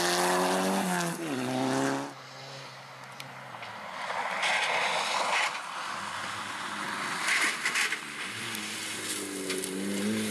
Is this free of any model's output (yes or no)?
yes